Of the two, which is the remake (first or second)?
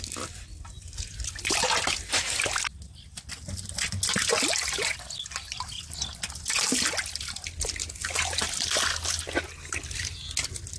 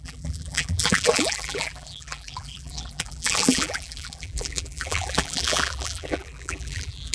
second